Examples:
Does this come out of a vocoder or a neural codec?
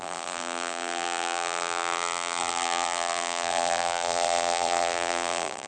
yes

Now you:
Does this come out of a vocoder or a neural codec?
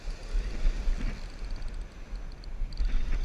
no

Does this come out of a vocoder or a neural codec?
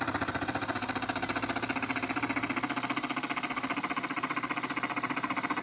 no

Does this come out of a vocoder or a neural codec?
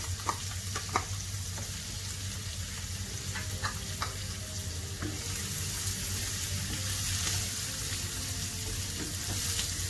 no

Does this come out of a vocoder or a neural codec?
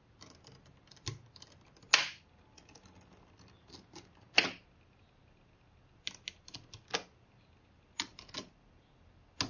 no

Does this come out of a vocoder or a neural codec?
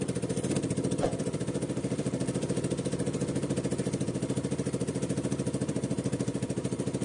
yes